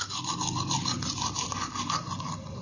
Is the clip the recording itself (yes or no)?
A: yes